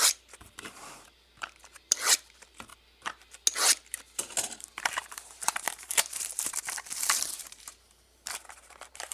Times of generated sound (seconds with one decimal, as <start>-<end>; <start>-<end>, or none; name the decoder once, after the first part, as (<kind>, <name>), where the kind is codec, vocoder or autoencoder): 0.0-2.7 (vocoder, BigVGAN v2); 4.2-9.1